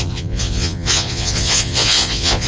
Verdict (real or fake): fake